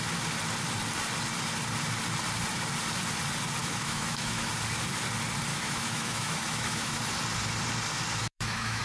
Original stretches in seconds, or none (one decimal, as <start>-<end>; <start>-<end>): 0.0-3.6; 4.5-5.5; 7.0-8.2